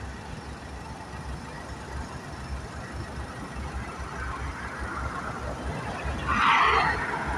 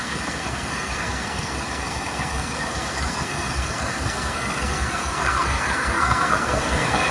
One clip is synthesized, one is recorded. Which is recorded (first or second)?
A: first